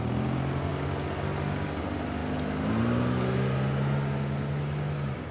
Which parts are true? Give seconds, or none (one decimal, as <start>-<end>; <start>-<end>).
0.0-5.3